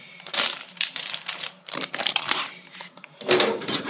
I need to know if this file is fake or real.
fake